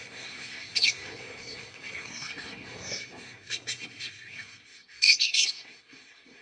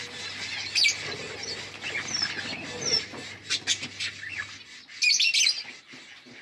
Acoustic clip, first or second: second